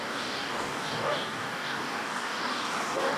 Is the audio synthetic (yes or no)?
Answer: yes